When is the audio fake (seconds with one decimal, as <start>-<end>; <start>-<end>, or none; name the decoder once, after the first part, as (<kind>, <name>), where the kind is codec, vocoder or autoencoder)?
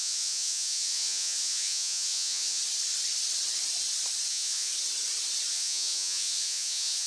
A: 0.0-2.6 (vocoder, Vocos); 4.3-4.7; 5.5-7.1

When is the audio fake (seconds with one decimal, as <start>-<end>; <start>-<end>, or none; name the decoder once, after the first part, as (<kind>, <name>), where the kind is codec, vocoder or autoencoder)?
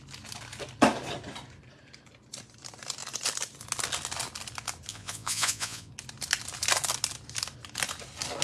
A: 4.9-5.9 (vocoder, Vocos)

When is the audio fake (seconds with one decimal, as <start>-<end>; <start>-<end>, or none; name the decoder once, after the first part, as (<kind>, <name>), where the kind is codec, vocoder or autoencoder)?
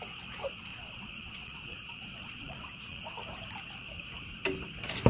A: 0.7-3.1 (vocoder, Vocos)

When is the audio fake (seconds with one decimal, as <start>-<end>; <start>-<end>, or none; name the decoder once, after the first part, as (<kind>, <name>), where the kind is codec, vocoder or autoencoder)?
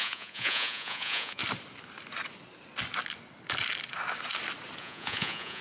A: 0.0-1.4 (vocoder, Vocos); 4.8-5.6